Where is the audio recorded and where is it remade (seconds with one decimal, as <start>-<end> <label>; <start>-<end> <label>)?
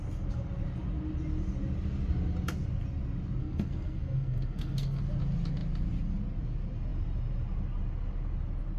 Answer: 0.0-3.4 recorded; 3.4-5.0 remade; 5.0-8.8 recorded